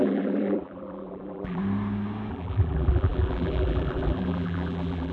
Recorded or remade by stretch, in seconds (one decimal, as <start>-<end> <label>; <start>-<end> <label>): 0.0-1.6 remade; 1.6-2.3 recorded; 2.3-5.1 remade